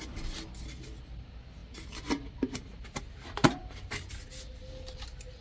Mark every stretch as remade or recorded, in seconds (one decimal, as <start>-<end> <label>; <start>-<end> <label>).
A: 0.0-5.4 recorded